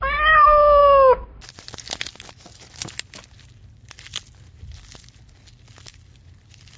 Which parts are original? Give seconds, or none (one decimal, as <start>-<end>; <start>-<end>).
0.0-6.8